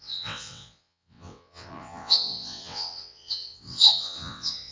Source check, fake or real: fake